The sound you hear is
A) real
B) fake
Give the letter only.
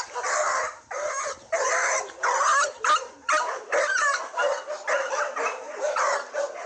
A